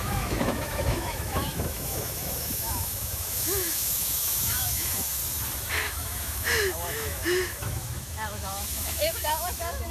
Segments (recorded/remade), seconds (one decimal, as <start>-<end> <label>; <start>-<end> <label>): 0.0-5.2 remade; 5.2-5.7 recorded; 5.7-9.9 remade